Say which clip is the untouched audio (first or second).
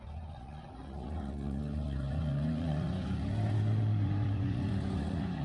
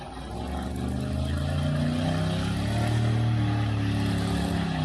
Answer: second